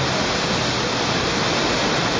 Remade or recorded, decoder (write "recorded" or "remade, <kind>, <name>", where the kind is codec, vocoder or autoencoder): recorded